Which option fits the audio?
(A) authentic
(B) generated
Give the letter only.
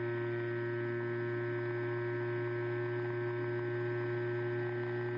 A